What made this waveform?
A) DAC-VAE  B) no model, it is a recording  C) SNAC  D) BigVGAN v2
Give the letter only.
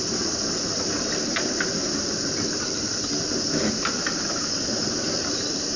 D